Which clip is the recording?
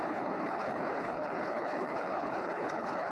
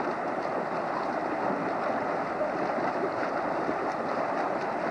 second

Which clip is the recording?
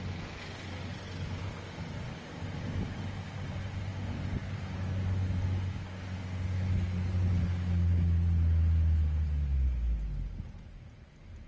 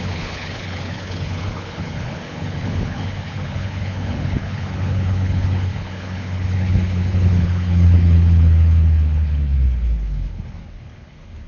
first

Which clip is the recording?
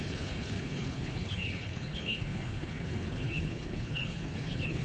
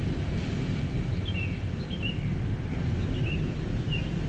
second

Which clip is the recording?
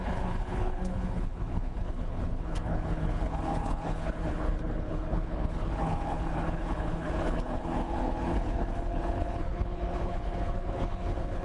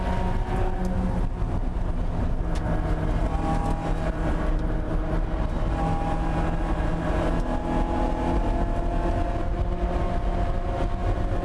second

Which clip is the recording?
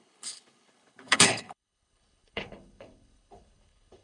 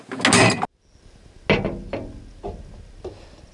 second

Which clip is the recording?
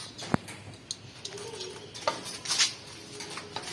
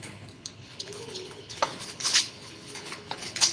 first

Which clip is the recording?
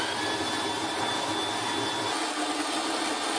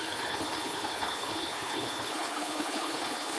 first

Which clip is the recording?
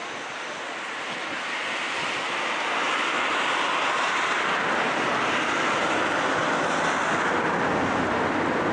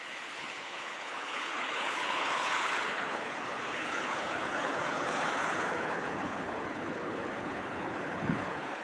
first